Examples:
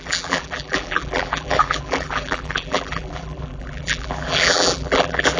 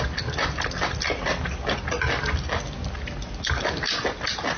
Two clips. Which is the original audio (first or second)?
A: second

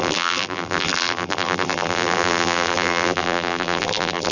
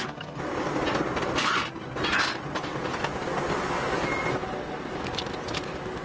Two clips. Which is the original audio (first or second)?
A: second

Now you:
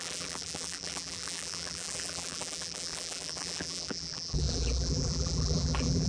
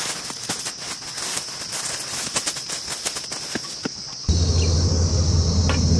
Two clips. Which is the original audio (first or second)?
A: second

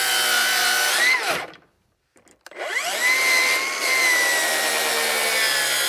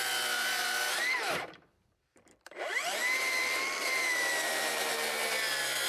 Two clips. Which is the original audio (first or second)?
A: first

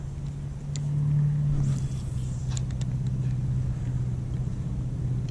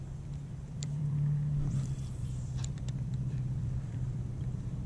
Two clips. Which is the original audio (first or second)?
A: first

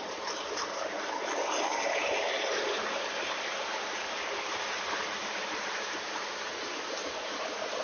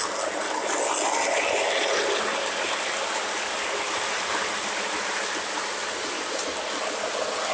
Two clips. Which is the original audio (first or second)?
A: second